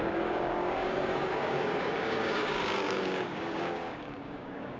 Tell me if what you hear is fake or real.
fake